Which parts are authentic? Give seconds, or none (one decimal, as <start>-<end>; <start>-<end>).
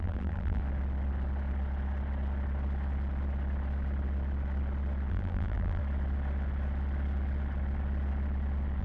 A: 0.6-5.1; 5.8-8.8